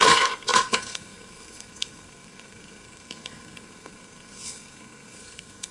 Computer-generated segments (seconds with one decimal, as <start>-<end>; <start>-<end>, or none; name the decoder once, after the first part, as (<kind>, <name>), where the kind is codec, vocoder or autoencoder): 0.0-5.7 (codec, SNAC)